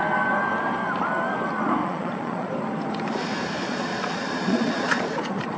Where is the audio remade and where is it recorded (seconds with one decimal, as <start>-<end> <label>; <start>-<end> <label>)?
0.0-1.8 recorded; 1.8-2.5 remade; 2.5-3.6 recorded; 3.6-5.6 remade